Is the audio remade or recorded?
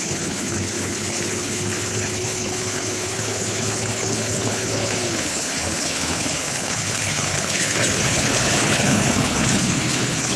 remade